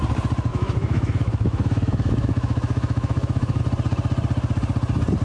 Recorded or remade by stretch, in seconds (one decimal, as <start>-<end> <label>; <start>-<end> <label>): 0.0-0.5 recorded; 0.5-3.6 remade; 3.6-5.2 recorded